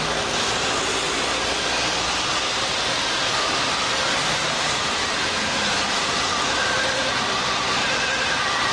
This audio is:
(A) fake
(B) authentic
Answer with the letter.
B